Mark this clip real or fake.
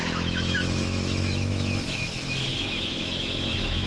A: fake